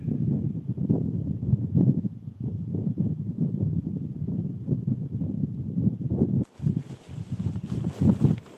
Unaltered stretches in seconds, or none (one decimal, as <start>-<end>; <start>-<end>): 0.0-1.5; 3.8-8.6